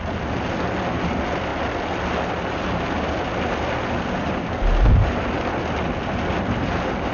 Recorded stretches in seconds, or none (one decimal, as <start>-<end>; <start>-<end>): 0.0-7.1